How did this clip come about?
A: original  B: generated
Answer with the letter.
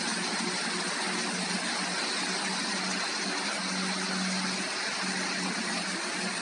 A